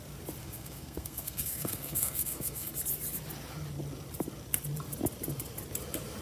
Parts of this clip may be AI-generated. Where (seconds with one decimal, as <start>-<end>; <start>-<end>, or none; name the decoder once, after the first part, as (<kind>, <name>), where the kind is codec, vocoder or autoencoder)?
0.4-2.7 (codec, SNAC)

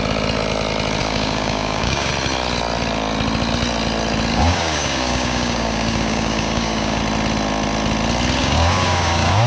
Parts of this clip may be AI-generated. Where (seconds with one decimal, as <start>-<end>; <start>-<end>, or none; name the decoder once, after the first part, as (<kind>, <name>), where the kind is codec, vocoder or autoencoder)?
1.0-2.1 (codec, DAC); 4.3-7.0; 8.4-9.5

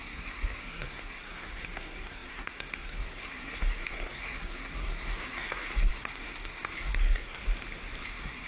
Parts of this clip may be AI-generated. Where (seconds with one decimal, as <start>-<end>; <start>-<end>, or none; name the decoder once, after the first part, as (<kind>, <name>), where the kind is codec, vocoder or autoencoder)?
0.0-7.4 (codec, SNAC); 8.0-8.5